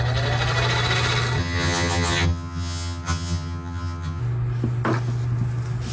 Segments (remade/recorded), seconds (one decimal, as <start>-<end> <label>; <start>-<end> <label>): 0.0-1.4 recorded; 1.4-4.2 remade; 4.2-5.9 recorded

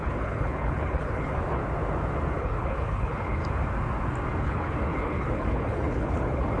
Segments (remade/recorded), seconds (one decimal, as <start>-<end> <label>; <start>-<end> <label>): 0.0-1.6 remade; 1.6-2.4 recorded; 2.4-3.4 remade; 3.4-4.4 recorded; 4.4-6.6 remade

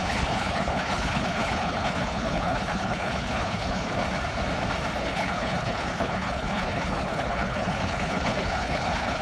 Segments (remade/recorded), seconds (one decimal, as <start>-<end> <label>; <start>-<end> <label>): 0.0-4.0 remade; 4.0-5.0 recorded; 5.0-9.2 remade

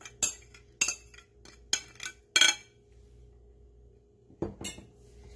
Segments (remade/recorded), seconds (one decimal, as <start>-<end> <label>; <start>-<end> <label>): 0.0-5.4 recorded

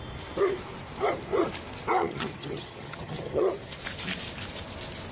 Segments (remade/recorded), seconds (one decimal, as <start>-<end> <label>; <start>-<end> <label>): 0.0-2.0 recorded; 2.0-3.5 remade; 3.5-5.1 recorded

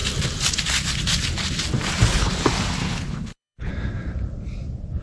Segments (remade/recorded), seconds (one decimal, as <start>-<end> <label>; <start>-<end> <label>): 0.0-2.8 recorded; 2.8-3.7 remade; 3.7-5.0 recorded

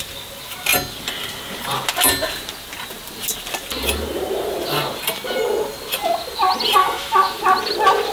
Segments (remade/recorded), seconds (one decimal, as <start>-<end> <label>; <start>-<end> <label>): 0.0-6.8 recorded; 6.8-7.4 remade; 7.4-8.1 recorded